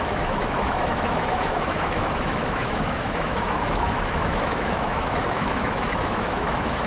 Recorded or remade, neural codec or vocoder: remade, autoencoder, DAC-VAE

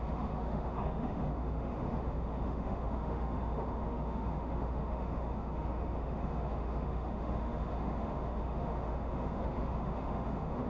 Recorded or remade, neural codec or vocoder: remade, autoencoder, DAC-VAE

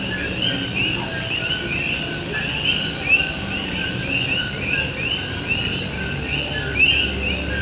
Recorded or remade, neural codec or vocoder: recorded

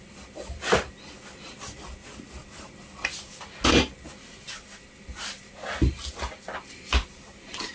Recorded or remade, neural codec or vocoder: recorded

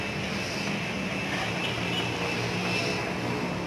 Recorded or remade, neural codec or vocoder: recorded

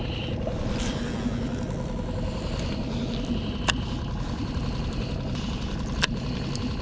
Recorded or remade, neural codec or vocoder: recorded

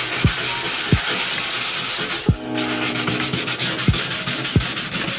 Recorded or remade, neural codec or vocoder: recorded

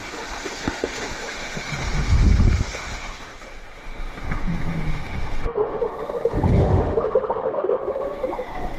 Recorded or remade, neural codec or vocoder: remade, autoencoder, DAC-VAE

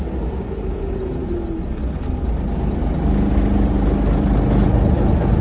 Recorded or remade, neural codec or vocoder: recorded